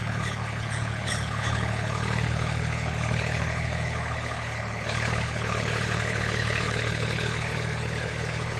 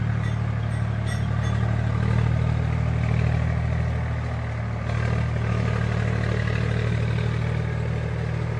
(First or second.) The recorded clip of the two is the second